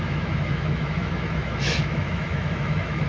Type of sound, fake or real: fake